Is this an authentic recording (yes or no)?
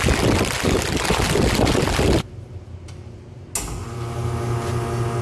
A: yes